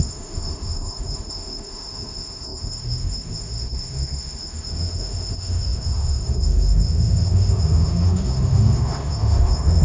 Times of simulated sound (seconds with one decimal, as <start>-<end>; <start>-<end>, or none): 0.0-9.8